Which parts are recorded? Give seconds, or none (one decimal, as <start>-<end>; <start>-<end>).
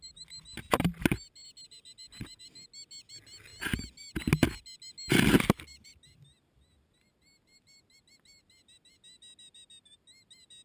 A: 0.0-10.6